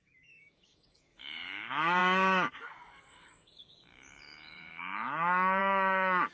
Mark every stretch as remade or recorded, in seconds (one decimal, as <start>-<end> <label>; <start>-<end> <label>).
0.0-6.3 remade